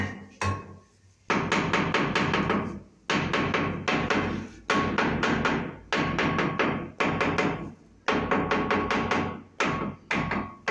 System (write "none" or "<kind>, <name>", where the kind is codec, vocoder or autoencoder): none